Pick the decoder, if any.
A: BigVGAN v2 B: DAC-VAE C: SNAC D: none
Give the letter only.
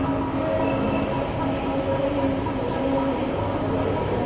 D